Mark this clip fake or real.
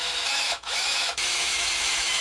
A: fake